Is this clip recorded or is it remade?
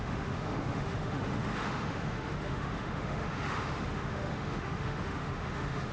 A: remade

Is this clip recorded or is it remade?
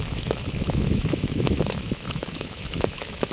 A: remade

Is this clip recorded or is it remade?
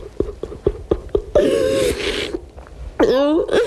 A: recorded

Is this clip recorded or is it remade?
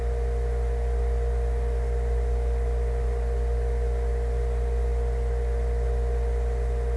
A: recorded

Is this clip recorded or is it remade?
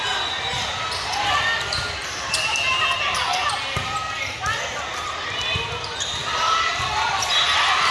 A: recorded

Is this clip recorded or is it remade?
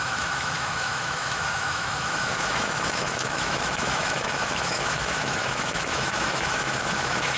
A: remade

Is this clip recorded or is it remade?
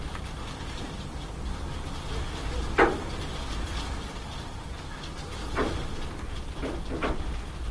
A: recorded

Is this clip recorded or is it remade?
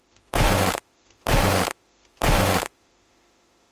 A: remade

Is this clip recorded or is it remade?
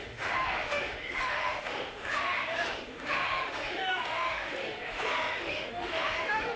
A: remade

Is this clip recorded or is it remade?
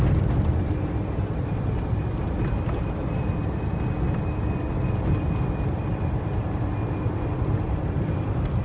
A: recorded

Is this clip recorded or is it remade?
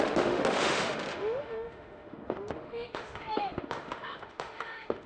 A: remade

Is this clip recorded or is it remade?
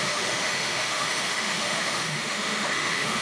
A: remade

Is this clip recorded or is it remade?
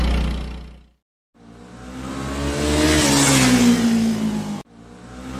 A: recorded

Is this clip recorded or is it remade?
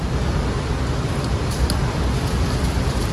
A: recorded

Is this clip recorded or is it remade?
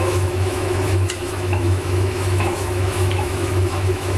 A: remade